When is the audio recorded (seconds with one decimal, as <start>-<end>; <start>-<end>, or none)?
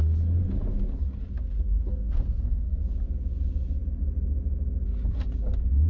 0.0-1.9; 2.8-5.9